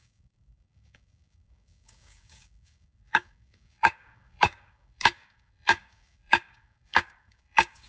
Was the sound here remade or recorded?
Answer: remade